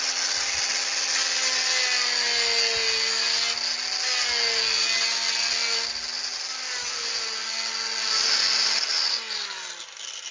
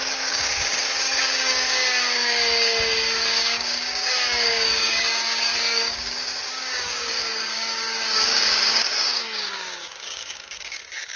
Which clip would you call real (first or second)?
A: first